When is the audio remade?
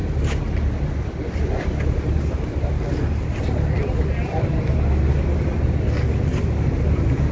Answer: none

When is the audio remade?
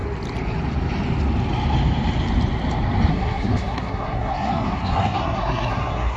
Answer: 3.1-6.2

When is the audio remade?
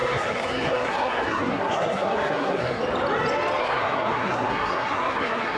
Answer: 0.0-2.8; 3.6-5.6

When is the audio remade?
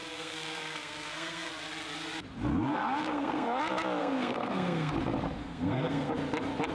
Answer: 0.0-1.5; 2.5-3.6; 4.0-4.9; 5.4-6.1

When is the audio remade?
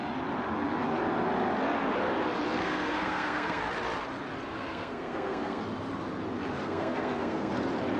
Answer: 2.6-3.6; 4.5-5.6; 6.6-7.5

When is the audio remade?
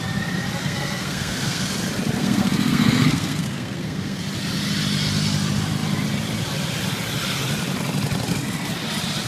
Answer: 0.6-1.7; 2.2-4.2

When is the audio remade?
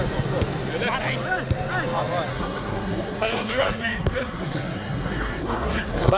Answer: 2.3-6.2